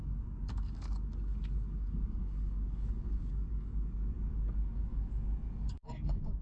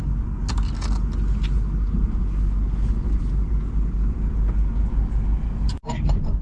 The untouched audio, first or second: second